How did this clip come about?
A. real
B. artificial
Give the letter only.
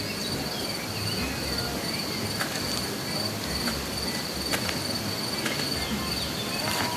A